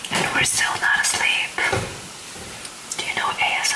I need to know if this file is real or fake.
real